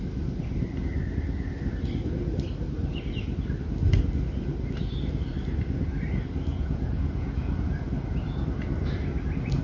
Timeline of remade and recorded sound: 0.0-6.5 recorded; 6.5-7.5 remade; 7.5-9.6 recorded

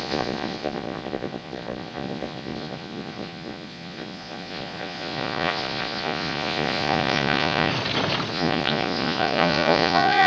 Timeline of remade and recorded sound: 0.0-7.7 remade; 7.7-8.3 recorded; 8.3-10.3 remade

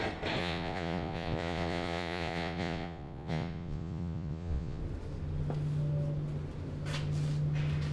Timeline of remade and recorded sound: 0.0-0.4 recorded; 0.4-4.8 remade; 4.8-7.9 recorded

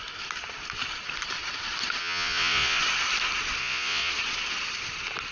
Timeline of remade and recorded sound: 0.0-2.0 recorded; 2.0-2.8 remade; 2.8-3.6 recorded; 3.6-4.1 remade; 4.1-5.3 recorded

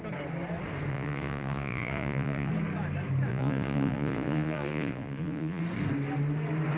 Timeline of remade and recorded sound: 0.0-0.9 recorded; 0.9-2.5 remade; 2.5-3.3 recorded; 3.3-5.6 remade; 5.6-6.8 recorded

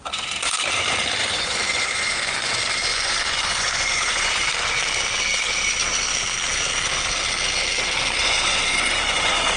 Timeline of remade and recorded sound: 0.0-1.2 recorded; 1.2-2.5 remade; 2.5-2.9 recorded; 2.9-4.5 remade; 4.5-8.2 recorded; 8.2-9.6 remade

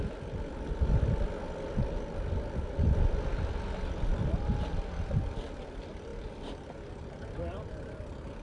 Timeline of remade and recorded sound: 0.0-8.4 recorded

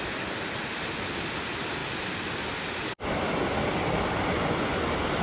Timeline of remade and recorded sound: 0.0-4.3 recorded; 4.3-4.8 remade; 4.8-5.2 recorded